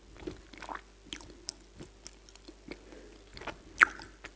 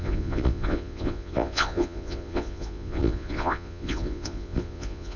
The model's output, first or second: second